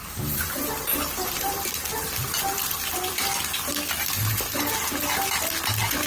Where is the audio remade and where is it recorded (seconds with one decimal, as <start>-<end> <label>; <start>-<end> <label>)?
0.0-3.7 remade; 3.7-6.1 recorded